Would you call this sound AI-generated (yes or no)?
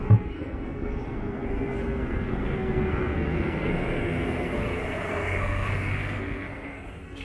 yes